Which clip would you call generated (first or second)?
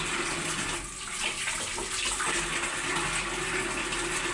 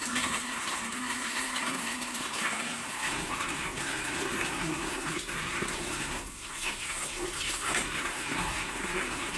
second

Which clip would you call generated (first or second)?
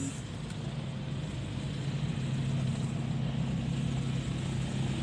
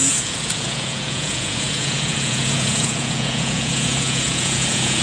second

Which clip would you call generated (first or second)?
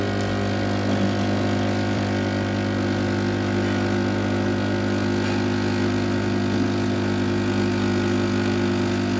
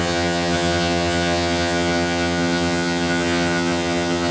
second